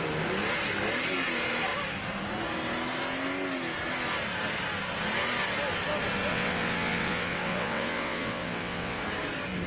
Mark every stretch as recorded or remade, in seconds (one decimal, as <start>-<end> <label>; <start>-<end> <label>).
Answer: 0.0-6.3 recorded; 6.3-9.0 remade; 9.0-9.7 recorded